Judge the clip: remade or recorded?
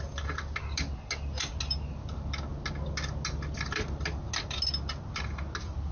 recorded